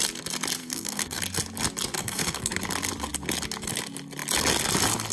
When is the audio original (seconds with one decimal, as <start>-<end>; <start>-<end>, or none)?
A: 0.0-0.6; 1.2-2.0; 2.5-5.1